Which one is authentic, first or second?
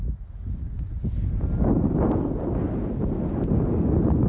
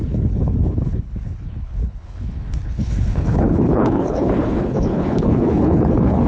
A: first